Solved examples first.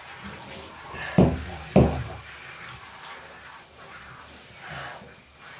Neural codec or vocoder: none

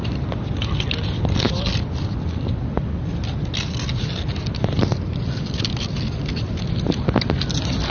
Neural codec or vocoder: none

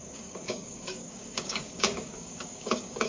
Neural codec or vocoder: codec, DAC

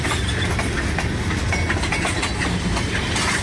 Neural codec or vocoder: none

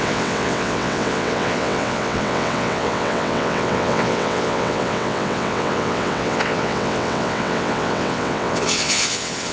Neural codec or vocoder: vocoder, WaveNeXt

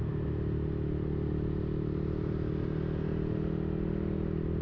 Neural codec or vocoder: none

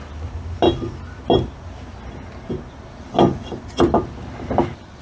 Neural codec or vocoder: none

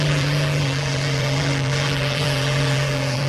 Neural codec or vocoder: vocoder, BigVGAN v2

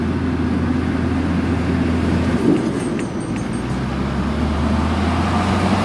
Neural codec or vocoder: none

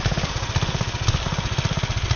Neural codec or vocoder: none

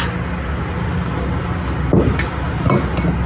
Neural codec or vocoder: none